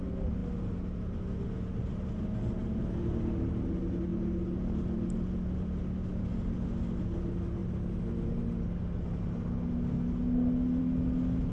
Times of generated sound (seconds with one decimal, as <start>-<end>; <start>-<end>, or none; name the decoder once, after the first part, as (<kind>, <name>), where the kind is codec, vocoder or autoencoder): none